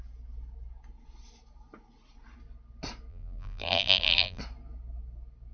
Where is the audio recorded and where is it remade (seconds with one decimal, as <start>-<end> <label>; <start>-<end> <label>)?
0.0-3.1 recorded; 3.1-4.4 remade; 4.4-5.5 recorded